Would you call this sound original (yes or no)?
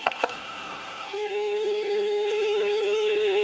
no